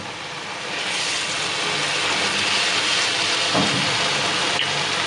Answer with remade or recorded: recorded